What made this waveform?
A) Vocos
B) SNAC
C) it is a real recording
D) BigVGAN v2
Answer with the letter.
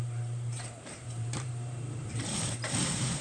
D